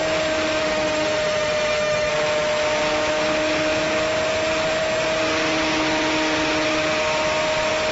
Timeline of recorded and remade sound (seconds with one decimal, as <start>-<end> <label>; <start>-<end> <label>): 0.0-0.6 recorded; 0.6-2.1 remade; 2.1-7.9 recorded